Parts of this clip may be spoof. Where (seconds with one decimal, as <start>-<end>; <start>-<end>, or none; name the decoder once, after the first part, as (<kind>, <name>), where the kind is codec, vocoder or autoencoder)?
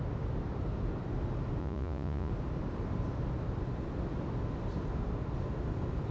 1.6-2.3 (vocoder, Vocos)